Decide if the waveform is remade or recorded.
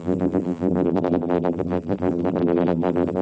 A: remade